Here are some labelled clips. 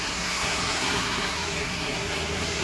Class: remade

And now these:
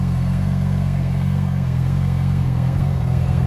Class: remade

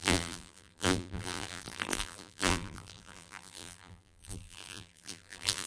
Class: remade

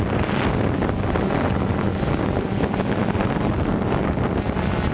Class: recorded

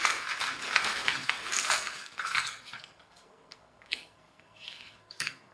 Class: remade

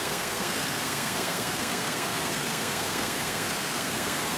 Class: remade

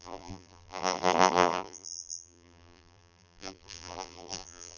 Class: remade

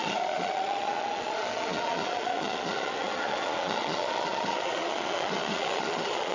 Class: remade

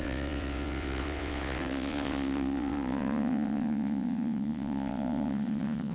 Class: remade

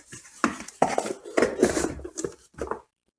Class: remade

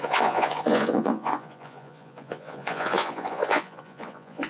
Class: remade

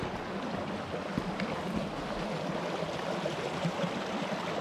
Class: recorded